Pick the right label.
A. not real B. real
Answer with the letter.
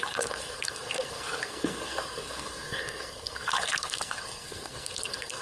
A